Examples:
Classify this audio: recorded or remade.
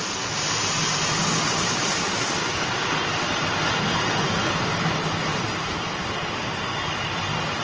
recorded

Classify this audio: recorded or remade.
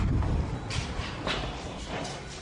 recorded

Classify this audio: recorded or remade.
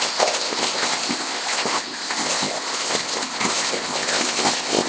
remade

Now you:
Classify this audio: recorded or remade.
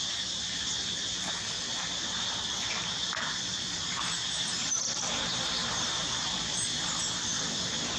remade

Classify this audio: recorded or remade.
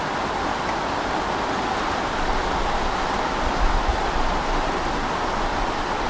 recorded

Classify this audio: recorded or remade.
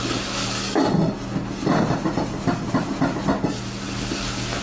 recorded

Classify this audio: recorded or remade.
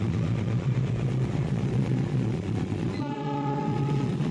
remade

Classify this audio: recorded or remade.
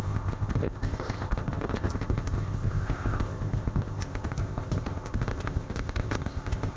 remade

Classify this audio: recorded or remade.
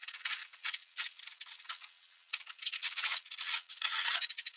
remade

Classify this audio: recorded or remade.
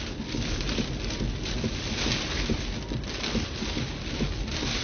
recorded